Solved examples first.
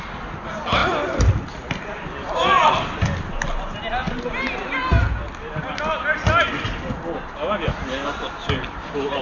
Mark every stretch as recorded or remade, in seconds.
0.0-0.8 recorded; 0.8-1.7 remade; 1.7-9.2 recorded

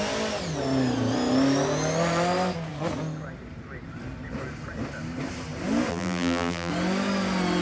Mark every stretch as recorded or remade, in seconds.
0.0-5.9 recorded; 5.9-6.7 remade; 6.7-7.6 recorded

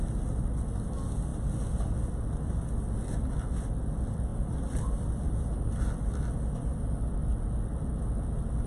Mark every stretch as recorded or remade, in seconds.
0.0-1.3 recorded; 1.3-1.8 remade; 1.8-4.3 recorded; 4.3-5.8 remade; 5.8-8.7 recorded

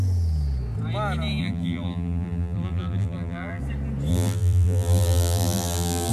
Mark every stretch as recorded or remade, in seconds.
0.0-1.4 recorded; 1.4-3.6 remade; 3.6-4.1 recorded; 4.1-6.1 remade

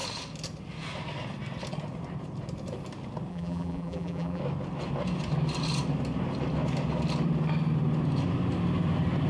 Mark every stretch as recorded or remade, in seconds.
0.0-3.3 recorded; 3.3-4.4 remade; 4.4-9.3 recorded

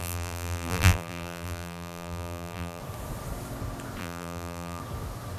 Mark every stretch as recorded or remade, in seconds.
0.0-2.8 remade; 2.8-4.0 recorded; 4.0-4.8 remade; 4.8-5.4 recorded